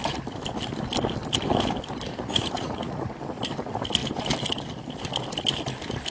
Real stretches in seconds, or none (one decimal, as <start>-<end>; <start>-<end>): 0.0-2.1; 3.1-6.1